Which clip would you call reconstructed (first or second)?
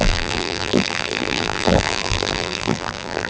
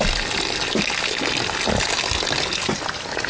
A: first